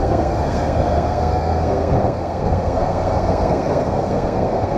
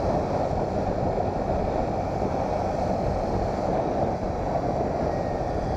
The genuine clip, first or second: second